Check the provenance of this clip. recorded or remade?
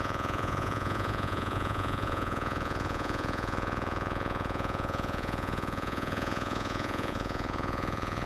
remade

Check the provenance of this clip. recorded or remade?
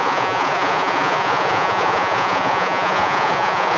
remade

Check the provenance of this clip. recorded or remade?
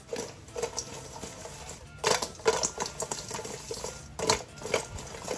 recorded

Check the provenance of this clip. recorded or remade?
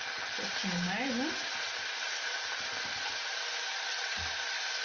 recorded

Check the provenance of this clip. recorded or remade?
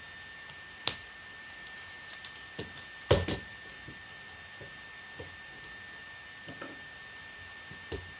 recorded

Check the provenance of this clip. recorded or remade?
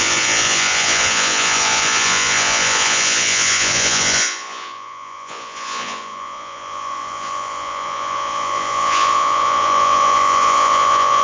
remade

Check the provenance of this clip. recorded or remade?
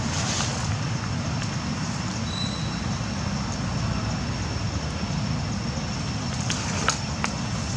recorded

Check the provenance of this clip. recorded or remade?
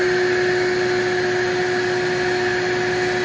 recorded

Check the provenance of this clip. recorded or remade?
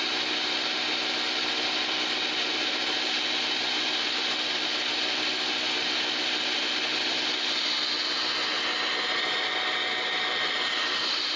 recorded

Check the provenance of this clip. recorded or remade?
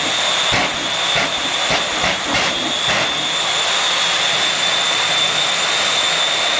recorded